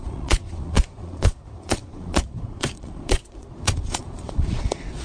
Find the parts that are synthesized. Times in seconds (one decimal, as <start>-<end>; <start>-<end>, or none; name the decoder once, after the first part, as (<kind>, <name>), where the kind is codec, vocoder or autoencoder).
0.0-5.0 (vocoder, Vocos)